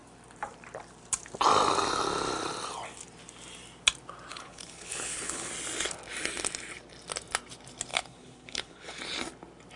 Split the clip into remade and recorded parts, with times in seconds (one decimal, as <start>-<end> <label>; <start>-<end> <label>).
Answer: 0.0-4.3 recorded; 4.3-5.5 remade; 5.5-7.9 recorded; 7.9-9.0 remade; 9.0-9.8 recorded